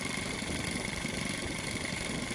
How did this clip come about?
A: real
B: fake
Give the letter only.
B